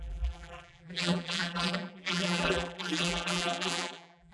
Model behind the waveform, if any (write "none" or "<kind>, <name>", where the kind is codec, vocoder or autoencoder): vocoder, BigVGAN v2